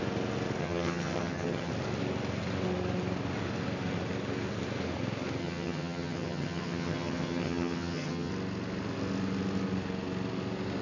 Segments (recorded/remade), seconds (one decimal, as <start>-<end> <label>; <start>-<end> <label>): 0.0-0.6 recorded; 0.6-1.7 remade; 1.7-5.4 recorded; 5.4-8.3 remade; 8.3-10.8 recorded